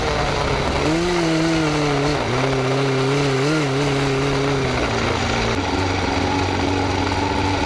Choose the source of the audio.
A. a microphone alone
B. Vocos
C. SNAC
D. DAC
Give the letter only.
A